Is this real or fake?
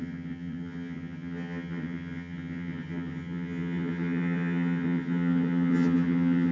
fake